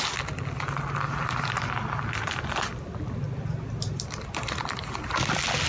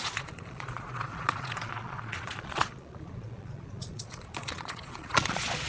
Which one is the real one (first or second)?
first